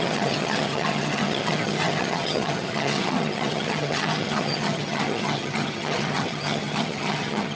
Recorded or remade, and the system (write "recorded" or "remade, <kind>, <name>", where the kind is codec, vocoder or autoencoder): remade, vocoder, HiFi-GAN